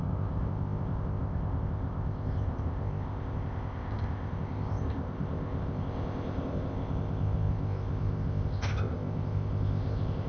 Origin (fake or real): fake